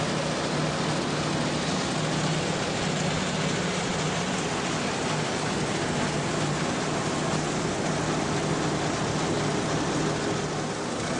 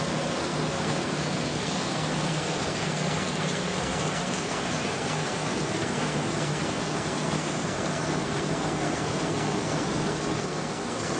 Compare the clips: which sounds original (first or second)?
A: first